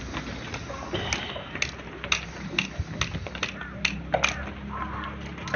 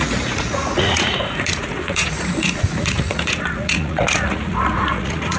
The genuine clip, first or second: first